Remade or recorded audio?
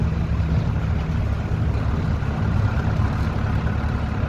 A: recorded